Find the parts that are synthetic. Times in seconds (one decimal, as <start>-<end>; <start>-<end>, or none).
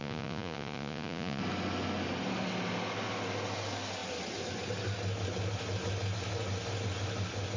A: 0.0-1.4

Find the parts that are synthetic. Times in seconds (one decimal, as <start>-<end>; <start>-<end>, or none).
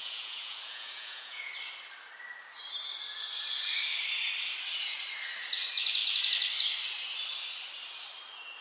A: 0.0-1.5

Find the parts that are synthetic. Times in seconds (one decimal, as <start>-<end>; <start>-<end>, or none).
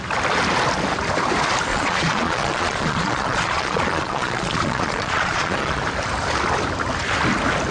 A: 1.7-5.8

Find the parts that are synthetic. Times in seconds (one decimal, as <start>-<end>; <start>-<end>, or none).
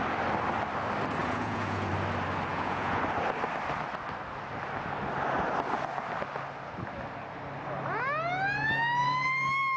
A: 1.2-1.9; 2.5-3.0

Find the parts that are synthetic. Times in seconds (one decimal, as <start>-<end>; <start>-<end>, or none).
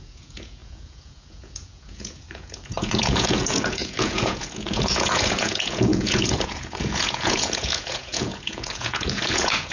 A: 0.0-9.7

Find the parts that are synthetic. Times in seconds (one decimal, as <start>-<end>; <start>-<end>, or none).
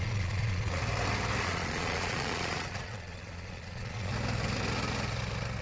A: 0.0-0.8; 1.4-4.1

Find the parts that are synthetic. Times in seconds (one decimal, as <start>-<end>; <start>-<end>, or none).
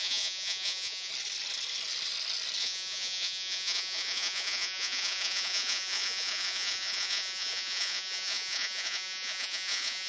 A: 0.0-1.1; 2.6-10.1